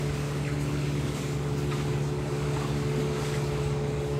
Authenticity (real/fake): fake